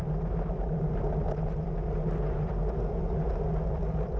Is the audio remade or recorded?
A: recorded